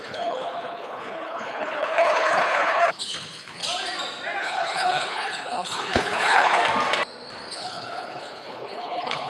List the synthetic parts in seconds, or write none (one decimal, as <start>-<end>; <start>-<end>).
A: 0.0-3.6; 4.4-6.6; 7.5-9.3